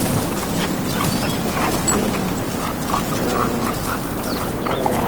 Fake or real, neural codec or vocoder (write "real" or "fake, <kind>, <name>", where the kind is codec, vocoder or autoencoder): real